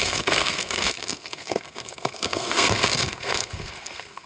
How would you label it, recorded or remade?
remade